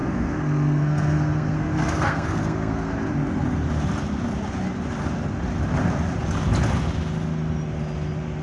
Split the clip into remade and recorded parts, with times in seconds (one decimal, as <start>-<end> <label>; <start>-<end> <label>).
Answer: 0.0-2.9 remade; 2.9-8.4 recorded